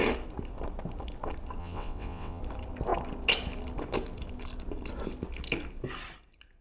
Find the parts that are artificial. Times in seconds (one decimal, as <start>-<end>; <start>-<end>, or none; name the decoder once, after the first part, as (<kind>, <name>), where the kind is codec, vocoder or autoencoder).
1.6-2.4 (vocoder, WaveNeXt)